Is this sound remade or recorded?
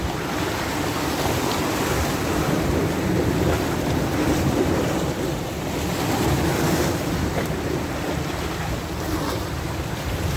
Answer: remade